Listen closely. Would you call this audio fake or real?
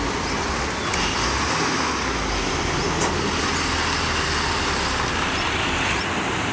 real